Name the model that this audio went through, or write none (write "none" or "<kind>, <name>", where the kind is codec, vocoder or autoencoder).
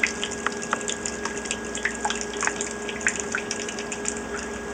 none